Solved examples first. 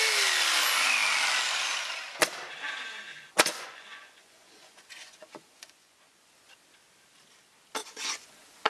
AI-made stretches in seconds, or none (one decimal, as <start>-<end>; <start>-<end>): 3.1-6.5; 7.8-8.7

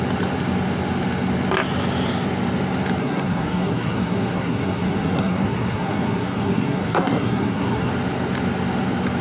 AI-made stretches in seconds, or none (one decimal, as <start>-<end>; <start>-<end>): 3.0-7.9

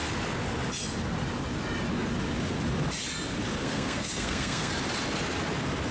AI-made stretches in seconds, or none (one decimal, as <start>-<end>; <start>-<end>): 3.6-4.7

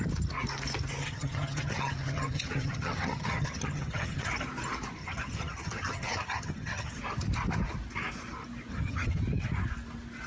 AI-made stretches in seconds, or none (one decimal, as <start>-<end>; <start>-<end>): 1.0-4.3; 5.0-7.0; 8.7-9.2

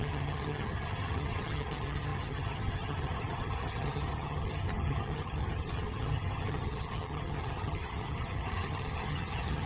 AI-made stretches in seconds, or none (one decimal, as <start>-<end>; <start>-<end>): 0.0-9.7